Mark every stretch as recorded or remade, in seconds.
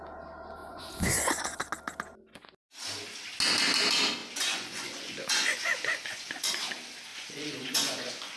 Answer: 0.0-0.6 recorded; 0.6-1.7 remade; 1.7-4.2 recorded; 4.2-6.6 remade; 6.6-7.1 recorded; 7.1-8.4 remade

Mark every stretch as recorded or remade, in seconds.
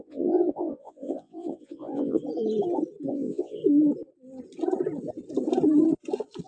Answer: 0.0-2.2 remade; 2.2-3.1 recorded; 3.1-3.6 remade; 3.6-6.5 recorded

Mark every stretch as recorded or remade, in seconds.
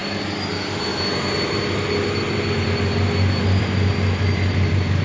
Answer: 0.0-5.0 recorded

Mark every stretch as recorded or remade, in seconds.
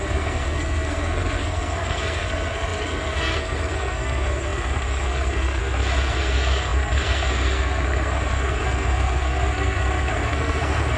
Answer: 0.0-11.0 remade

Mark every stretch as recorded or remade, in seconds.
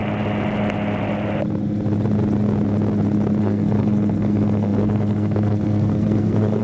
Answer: 0.0-3.4 recorded; 3.4-6.6 remade